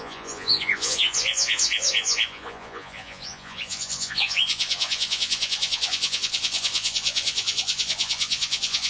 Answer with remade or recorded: remade